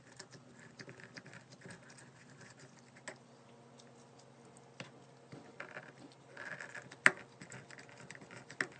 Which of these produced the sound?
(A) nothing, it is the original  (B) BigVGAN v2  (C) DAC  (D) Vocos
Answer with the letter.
A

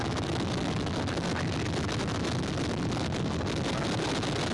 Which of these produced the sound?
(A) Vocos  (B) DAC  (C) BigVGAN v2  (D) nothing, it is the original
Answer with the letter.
D